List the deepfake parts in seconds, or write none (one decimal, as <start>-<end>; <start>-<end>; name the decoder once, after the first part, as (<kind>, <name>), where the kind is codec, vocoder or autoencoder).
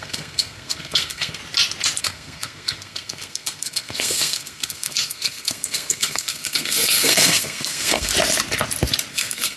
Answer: 0.0-1.4 (codec, SNAC); 2.0-8.1; 9.1-9.6